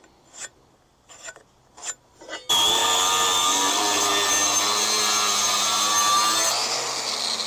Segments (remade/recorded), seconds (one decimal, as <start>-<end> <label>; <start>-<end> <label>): 0.0-7.5 recorded